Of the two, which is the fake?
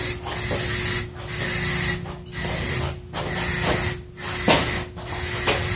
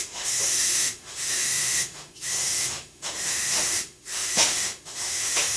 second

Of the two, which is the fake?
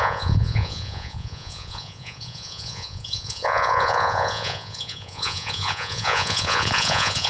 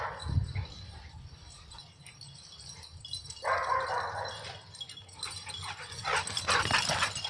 first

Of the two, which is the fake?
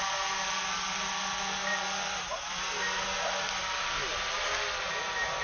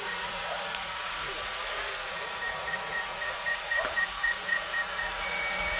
second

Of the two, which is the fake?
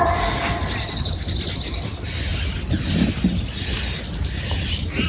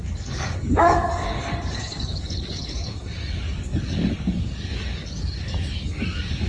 second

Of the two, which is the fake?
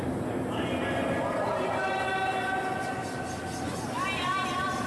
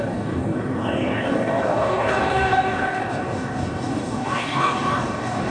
second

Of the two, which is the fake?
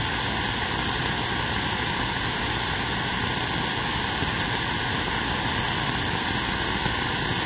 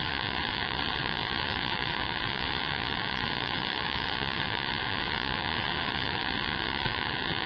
second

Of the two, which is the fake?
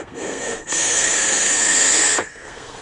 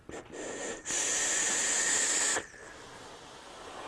first